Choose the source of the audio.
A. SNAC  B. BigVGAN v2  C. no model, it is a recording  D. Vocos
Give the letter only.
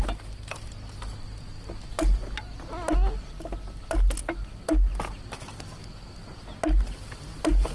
C